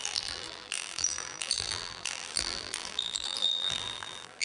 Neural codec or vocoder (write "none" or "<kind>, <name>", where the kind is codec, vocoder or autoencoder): vocoder, BigVGAN v2